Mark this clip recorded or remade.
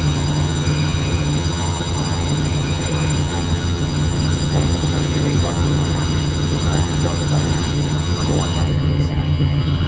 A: remade